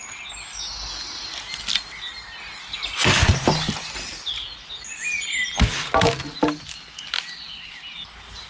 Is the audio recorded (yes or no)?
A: yes